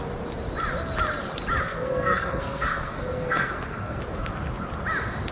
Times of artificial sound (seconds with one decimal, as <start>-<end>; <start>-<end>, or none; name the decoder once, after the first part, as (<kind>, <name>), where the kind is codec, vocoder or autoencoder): 1.6-4.0 (codec, SNAC)